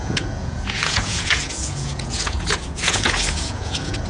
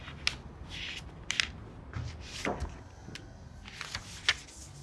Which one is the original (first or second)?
second